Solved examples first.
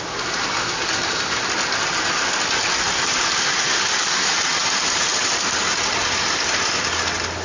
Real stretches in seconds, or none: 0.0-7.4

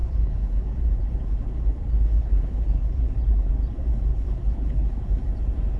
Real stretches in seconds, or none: 3.5-4.1; 5.1-5.8

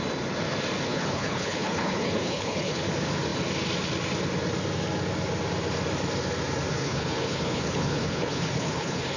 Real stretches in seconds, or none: 0.0-0.9; 2.8-6.7